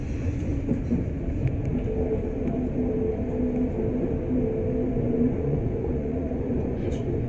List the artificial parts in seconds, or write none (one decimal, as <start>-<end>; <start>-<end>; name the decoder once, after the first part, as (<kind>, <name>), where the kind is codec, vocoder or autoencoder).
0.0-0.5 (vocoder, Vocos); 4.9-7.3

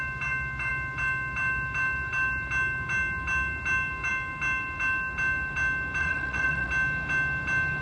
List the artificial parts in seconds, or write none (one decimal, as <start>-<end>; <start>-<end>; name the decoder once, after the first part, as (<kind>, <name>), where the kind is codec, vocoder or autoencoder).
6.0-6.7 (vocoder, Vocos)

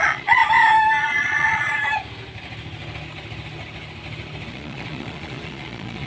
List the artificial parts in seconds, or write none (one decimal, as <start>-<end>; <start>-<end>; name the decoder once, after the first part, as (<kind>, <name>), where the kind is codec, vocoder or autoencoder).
0.0-0.4 (vocoder, Vocos); 1.0-1.8; 4.5-6.1